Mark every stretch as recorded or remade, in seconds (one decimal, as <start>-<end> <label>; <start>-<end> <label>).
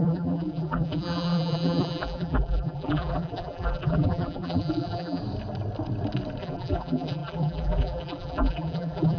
0.0-5.2 remade; 5.2-6.4 recorded; 6.4-9.2 remade